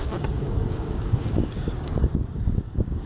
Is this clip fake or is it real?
fake